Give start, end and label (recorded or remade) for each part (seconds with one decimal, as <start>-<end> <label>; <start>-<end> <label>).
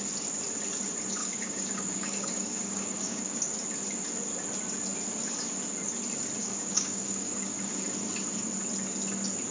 0.0-1.2 recorded; 1.2-3.4 remade; 3.4-6.4 recorded; 6.4-7.8 remade; 7.8-9.5 recorded